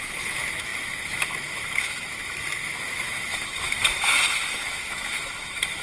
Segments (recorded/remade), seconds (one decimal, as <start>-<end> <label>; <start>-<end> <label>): 0.0-5.8 remade